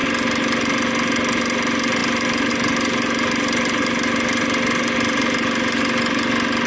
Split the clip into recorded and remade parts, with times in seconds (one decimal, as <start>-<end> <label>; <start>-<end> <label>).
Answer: 0.0-6.7 recorded